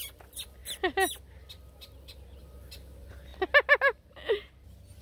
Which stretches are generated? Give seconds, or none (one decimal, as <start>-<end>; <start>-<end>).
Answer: none